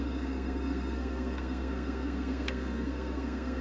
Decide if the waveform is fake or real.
fake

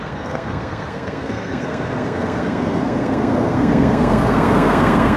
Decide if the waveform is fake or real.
fake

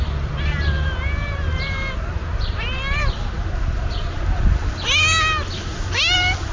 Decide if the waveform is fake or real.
real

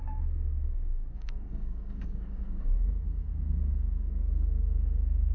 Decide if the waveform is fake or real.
fake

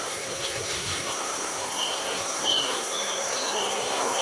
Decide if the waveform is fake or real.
fake